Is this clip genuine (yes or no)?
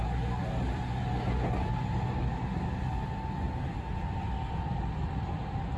yes